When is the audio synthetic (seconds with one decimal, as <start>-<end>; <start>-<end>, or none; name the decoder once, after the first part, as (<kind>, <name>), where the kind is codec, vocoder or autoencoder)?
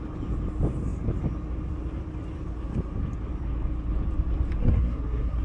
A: 4.6-5.4 (codec, SNAC)